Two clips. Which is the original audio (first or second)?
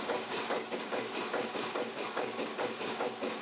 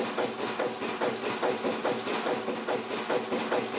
second